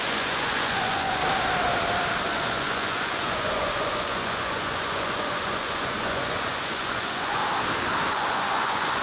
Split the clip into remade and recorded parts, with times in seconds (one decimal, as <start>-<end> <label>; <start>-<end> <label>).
0.0-1.2 remade; 1.2-2.2 recorded; 2.2-7.4 remade; 7.4-8.1 recorded; 8.1-9.0 remade